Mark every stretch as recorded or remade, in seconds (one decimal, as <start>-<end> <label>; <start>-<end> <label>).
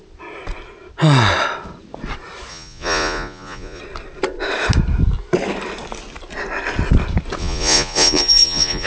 0.0-2.5 recorded; 2.5-3.8 remade; 3.8-7.4 recorded; 7.4-8.9 remade